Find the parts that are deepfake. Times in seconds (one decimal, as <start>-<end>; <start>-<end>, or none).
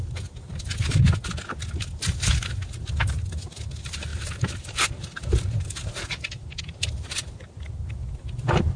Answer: none